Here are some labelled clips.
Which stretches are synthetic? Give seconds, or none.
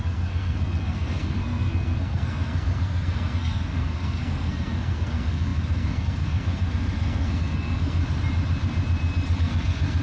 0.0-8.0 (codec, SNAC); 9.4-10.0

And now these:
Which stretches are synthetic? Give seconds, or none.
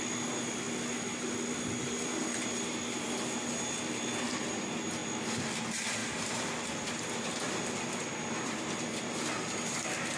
6.0-7.2 (vocoder, BigVGAN v2)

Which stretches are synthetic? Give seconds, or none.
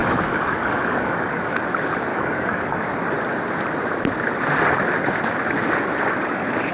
0.0-1.6 (codec, DAC); 2.1-3.1